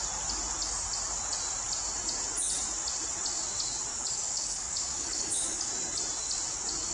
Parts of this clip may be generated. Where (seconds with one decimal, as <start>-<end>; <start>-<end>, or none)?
3.9-5.7